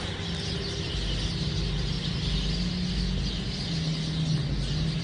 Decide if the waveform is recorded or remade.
recorded